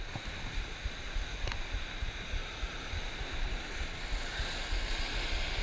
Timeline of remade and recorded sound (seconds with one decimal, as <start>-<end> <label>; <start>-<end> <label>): 0.0-2.4 recorded; 2.4-2.9 remade; 2.9-5.6 recorded